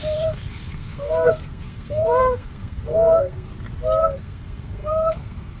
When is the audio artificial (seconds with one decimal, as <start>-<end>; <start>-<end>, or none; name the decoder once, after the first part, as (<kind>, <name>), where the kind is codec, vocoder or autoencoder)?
0.0-3.5 (codec, SNAC); 4.0-5.6